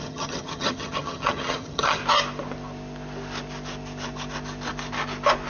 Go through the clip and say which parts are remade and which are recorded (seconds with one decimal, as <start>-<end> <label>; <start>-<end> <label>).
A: 0.0-2.0 remade; 2.0-5.5 recorded

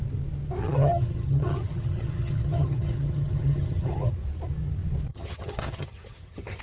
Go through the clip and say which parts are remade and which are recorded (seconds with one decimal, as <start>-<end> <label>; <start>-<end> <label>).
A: 0.0-0.6 recorded; 0.6-4.1 remade; 4.1-5.1 recorded; 5.1-6.6 remade

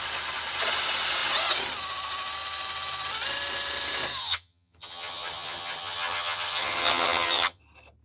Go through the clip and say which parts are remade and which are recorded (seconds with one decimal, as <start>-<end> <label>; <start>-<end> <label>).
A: 0.0-4.2 recorded; 4.2-7.6 remade; 7.6-8.0 recorded

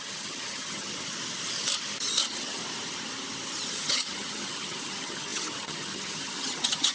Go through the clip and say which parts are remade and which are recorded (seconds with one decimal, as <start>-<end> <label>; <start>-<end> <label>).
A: 0.0-0.9 remade; 0.9-2.2 recorded; 2.2-2.6 remade; 2.6-3.7 recorded; 3.7-6.9 remade

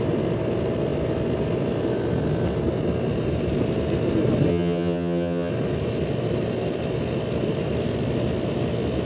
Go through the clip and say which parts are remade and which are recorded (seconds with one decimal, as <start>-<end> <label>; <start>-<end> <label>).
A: 0.0-4.5 recorded; 4.5-5.5 remade; 5.5-9.1 recorded

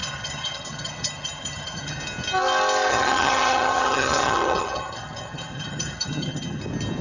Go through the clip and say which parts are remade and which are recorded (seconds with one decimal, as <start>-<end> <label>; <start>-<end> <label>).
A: 0.0-2.0 remade; 2.0-2.9 recorded; 2.9-6.6 remade; 6.6-7.0 recorded

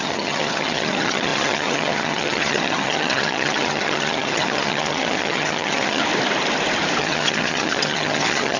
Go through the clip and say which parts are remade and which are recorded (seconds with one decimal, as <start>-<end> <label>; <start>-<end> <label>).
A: 0.0-6.0 remade; 6.0-7.0 recorded; 7.0-8.6 remade

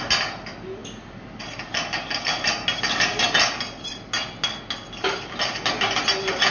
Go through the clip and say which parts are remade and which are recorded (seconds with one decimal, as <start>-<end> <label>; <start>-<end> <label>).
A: 0.0-6.5 recorded